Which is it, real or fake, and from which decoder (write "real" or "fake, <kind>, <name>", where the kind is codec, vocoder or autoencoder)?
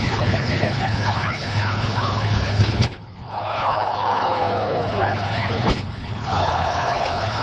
fake, codec, HILCodec